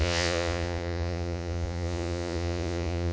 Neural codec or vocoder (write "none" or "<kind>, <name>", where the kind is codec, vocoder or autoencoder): vocoder, Vocos